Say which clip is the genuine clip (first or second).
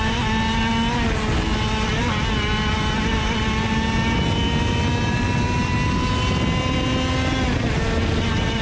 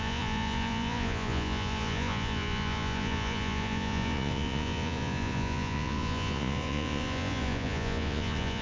first